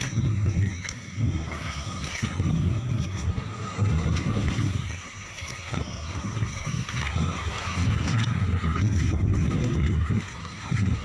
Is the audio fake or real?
fake